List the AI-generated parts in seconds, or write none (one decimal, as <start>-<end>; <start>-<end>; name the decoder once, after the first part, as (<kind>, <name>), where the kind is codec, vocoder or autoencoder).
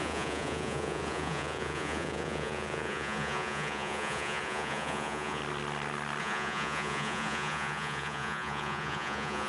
0.0-5.4 (vocoder, Vocos); 6.2-9.5